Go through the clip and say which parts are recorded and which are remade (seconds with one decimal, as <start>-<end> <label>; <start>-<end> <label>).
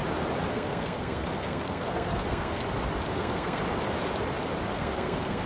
0.0-0.5 recorded; 0.5-2.6 remade; 2.6-3.1 recorded; 3.1-3.6 remade; 3.6-4.7 recorded; 4.7-5.5 remade